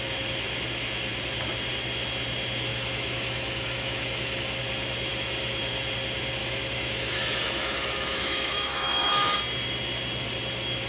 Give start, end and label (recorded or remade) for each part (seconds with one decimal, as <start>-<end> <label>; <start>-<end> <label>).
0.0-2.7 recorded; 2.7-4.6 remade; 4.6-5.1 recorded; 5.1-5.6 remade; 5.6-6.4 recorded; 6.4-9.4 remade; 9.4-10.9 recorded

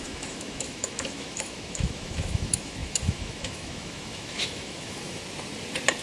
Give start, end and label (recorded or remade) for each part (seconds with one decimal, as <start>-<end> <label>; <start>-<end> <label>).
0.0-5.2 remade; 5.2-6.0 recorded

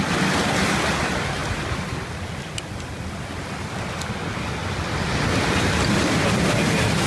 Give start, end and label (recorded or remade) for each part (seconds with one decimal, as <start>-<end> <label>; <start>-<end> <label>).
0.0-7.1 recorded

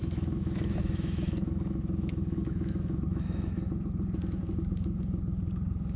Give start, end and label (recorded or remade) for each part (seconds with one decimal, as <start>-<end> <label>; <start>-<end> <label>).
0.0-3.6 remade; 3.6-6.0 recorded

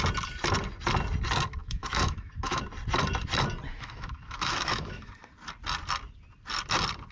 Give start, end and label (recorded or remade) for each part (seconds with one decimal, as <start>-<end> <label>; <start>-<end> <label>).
0.0-1.6 recorded; 1.6-2.6 remade; 2.6-3.7 recorded; 3.7-5.1 remade; 5.1-7.1 recorded

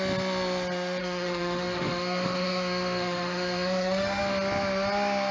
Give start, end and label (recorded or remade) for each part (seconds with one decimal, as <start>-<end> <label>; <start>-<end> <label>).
0.0-1.0 recorded; 1.0-4.2 remade; 4.2-5.3 recorded